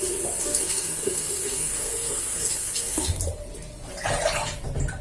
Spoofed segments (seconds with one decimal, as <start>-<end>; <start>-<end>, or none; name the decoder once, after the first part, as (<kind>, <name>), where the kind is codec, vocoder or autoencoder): 0.4-3.2 (codec, SNAC)